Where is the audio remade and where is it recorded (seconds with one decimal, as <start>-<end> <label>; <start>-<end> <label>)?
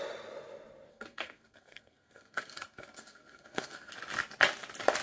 0.0-0.9 recorded; 0.9-3.9 remade; 3.9-5.0 recorded